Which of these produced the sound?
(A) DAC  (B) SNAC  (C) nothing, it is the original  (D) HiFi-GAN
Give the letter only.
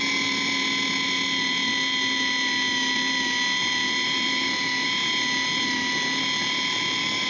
C